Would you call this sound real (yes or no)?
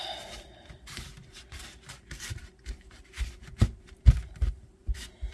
yes